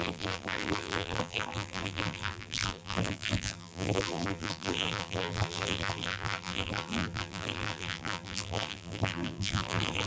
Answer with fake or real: fake